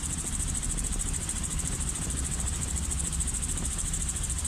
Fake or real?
fake